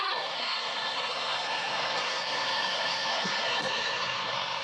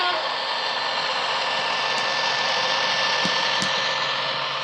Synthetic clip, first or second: first